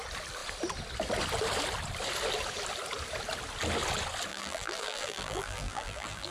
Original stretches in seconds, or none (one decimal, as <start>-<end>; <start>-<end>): 0.0-4.3